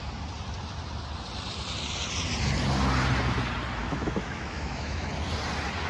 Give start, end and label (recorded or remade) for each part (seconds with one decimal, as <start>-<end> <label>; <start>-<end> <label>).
0.0-3.8 recorded; 3.8-5.1 remade; 5.1-5.9 recorded